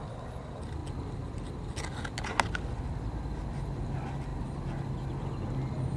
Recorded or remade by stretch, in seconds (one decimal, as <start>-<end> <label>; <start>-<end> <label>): 0.0-6.0 recorded